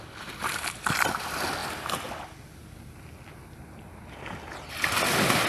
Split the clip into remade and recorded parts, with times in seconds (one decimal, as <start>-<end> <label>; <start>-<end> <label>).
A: 0.0-5.5 recorded